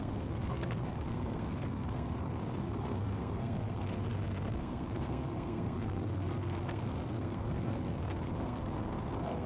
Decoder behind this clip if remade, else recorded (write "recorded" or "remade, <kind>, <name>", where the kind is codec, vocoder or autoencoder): remade, codec, SNAC